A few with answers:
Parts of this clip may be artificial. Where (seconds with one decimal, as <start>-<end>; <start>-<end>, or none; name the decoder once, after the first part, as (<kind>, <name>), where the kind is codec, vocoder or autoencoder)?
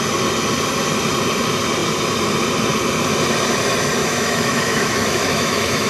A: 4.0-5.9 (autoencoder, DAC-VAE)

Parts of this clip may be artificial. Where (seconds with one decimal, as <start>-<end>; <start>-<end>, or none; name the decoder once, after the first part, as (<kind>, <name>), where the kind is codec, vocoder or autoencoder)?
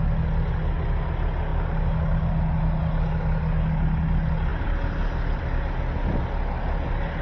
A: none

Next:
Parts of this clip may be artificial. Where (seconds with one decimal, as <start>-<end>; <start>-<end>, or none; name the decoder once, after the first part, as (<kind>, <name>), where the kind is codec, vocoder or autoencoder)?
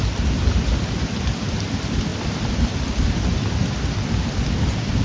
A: none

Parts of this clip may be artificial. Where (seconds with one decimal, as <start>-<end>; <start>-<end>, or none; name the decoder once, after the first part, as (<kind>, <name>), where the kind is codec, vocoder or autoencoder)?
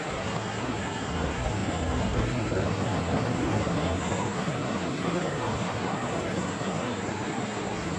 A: 0.0-8.0 (codec, SNAC)